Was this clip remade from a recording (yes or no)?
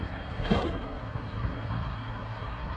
yes